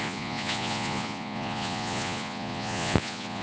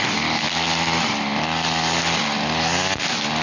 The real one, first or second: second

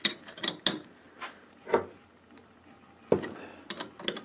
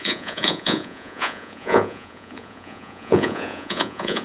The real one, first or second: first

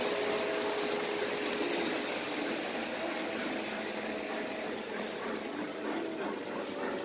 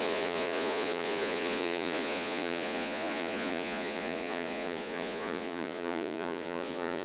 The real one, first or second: first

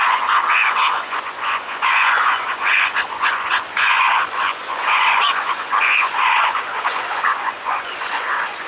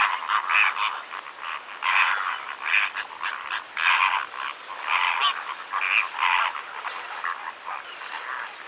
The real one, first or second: second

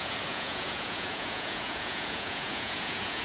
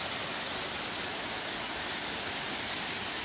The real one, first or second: second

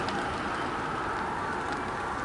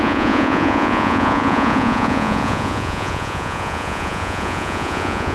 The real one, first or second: first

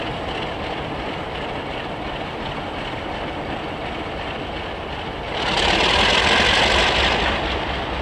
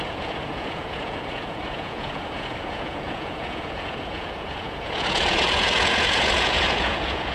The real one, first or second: first